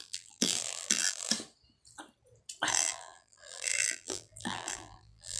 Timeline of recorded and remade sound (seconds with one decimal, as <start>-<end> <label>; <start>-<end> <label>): 0.0-1.3 remade; 1.3-2.7 recorded; 2.7-5.4 remade